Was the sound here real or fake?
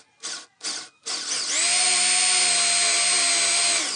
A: real